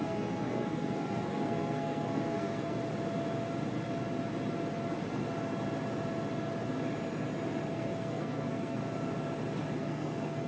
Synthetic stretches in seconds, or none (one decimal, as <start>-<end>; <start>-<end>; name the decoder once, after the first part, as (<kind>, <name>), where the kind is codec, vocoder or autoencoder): 0.0-2.8 (codec, SNAC); 7.7-8.8; 9.8-10.5